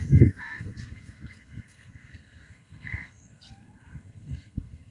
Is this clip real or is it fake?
fake